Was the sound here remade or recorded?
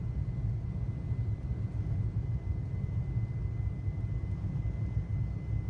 recorded